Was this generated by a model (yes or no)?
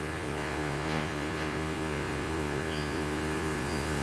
yes